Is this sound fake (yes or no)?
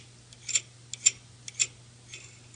no